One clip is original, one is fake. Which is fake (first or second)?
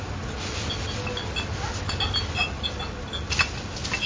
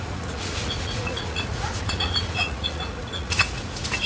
second